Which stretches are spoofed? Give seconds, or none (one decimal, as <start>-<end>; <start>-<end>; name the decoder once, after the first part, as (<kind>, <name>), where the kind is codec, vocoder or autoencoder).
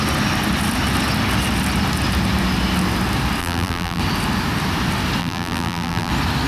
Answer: 3.4-4.0 (vocoder, BigVGAN v2); 5.2-6.1